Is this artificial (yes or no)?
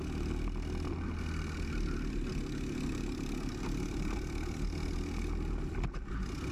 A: no